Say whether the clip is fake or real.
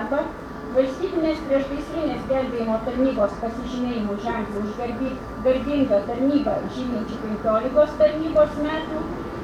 fake